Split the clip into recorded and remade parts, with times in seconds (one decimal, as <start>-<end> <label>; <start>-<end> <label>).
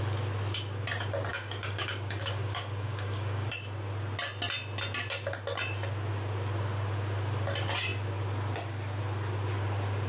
0.0-1.3 recorded; 1.3-3.5 remade; 3.5-10.1 recorded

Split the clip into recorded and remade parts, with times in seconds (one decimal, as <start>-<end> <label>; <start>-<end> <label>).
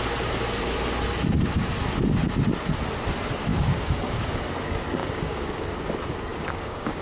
0.0-3.5 recorded; 3.5-4.4 remade; 4.4-5.0 recorded; 5.0-5.6 remade; 5.6-6.3 recorded; 6.3-7.0 remade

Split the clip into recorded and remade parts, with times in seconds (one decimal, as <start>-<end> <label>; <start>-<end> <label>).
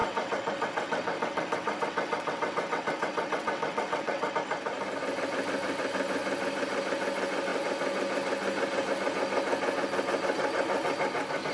0.0-4.3 remade; 4.3-11.5 recorded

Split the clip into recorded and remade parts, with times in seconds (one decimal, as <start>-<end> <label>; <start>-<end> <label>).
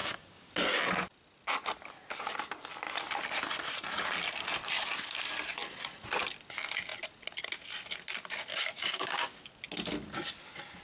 0.0-0.5 remade; 0.5-8.5 recorded; 8.5-9.5 remade; 9.5-10.8 recorded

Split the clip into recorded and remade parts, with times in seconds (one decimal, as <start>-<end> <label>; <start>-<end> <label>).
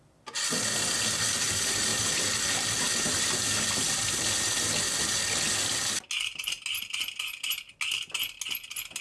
0.0-9.0 recorded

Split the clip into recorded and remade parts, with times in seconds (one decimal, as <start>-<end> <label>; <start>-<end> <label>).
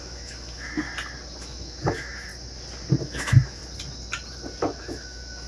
0.0-0.9 remade; 0.9-1.4 recorded; 1.4-2.3 remade; 2.3-3.0 recorded; 3.0-3.6 remade; 3.6-4.6 recorded; 4.6-5.5 remade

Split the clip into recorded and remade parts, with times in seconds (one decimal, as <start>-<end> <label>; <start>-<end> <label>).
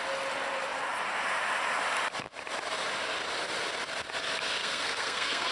0.0-4.6 recorded; 4.6-5.5 remade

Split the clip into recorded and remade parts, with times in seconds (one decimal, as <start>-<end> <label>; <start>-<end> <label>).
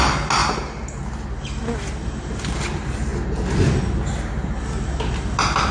0.0-5.7 recorded